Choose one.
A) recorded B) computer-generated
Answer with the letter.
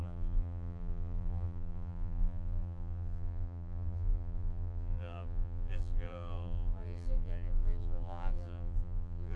B